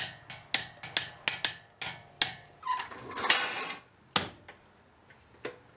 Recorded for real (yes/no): yes